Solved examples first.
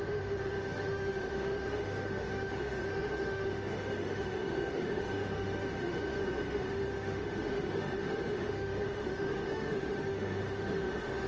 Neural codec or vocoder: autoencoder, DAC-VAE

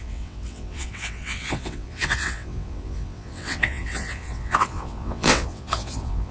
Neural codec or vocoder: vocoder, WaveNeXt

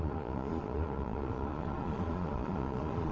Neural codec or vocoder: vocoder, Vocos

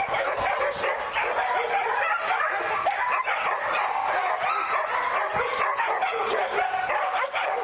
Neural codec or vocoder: none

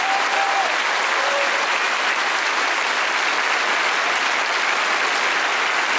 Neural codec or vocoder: none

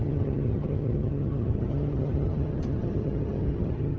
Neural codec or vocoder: vocoder, HiFi-GAN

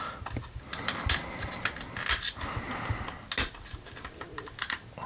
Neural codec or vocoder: none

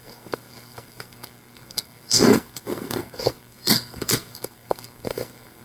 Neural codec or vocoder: codec, SNAC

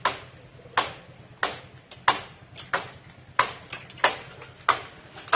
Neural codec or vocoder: none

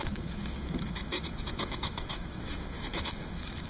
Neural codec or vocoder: autoencoder, DAC-VAE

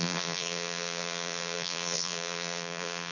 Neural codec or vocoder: vocoder, BigVGAN v2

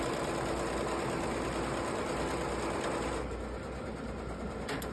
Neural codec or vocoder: none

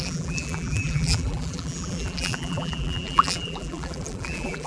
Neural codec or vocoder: vocoder, BigVGAN v2